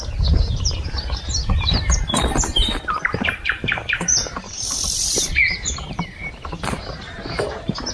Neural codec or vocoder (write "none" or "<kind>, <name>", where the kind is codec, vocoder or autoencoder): vocoder, BigVGAN v2